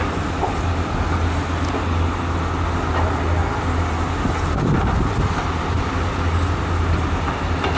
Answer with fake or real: real